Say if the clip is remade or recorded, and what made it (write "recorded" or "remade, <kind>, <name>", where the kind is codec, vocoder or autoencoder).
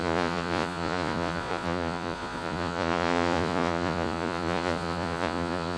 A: remade, vocoder, Vocos